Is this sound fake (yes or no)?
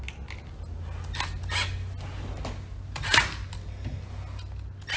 no